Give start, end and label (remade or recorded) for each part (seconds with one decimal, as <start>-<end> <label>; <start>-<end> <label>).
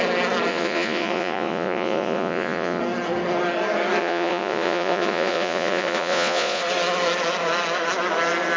0.0-0.5 recorded; 0.5-2.8 remade; 2.8-4.0 recorded; 4.0-6.6 remade; 6.6-8.6 recorded